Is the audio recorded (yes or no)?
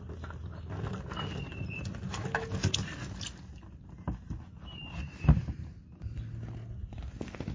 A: yes